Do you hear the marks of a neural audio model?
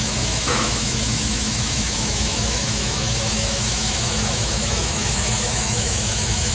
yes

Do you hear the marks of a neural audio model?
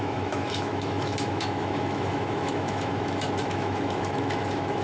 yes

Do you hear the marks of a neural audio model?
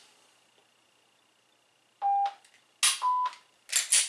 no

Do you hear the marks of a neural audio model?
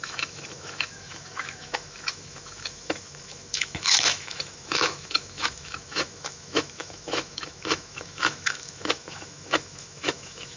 yes